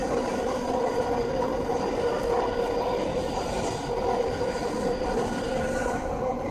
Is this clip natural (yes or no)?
yes